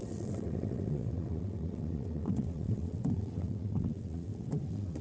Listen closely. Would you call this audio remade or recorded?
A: remade